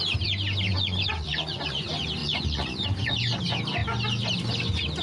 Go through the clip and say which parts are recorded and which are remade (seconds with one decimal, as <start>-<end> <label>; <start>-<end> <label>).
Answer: 0.0-0.7 recorded; 0.7-1.8 remade; 1.8-2.2 recorded; 2.2-3.4 remade; 3.4-5.0 recorded